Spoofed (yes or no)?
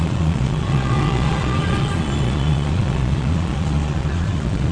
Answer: yes